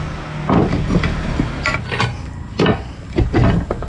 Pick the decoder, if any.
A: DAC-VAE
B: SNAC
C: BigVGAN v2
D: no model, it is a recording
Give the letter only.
D